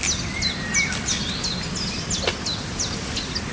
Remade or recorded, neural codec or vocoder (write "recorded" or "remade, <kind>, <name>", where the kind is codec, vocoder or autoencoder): recorded